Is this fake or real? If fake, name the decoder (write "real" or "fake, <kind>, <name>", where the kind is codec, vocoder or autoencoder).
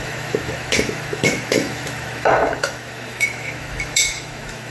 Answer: fake, autoencoder, DAC-VAE